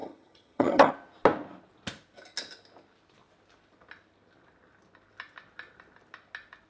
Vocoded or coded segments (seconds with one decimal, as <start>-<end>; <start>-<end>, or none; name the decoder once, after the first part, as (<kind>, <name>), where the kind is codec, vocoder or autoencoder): 0.0-0.9 (vocoder, HiFi-GAN)